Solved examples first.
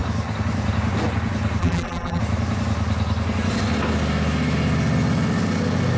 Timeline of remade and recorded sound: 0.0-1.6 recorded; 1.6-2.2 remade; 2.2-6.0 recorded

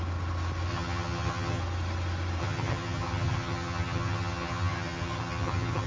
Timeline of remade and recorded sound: 0.0-0.7 recorded; 0.7-1.6 remade; 1.6-2.4 recorded; 2.4-5.9 remade

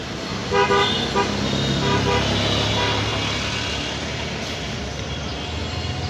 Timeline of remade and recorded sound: 0.0-6.1 recorded

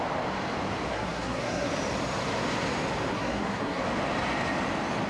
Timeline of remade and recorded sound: 0.0-0.9 recorded; 0.9-1.7 remade; 1.7-3.1 recorded; 3.1-3.8 remade; 3.8-5.1 recorded

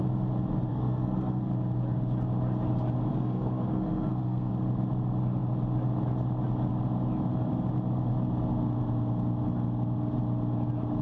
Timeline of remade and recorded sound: 0.0-0.7 recorded; 0.7-1.5 remade; 1.5-3.1 recorded; 3.1-4.5 remade; 4.5-11.0 recorded

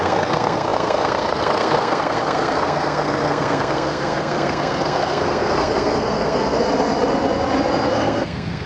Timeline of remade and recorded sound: 0.0-6.6 remade; 6.6-7.9 recorded; 7.9-8.7 remade